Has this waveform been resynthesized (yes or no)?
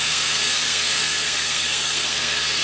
yes